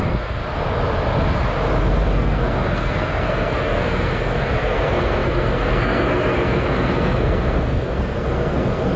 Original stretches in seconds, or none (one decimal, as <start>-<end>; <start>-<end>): 0.4-1.8